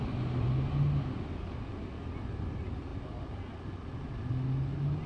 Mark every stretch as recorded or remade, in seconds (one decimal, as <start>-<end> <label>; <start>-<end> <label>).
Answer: 0.0-5.1 recorded